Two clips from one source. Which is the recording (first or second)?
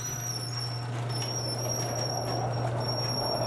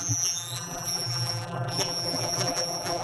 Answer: first